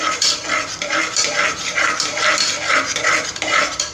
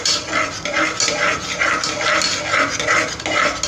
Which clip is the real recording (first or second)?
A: second